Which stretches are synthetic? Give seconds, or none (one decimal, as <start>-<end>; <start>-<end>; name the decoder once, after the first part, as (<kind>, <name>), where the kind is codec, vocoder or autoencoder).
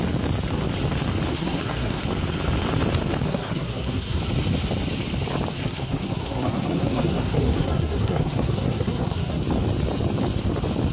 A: 1.3-2.0 (codec, SNAC); 3.3-4.2; 5.6-9.4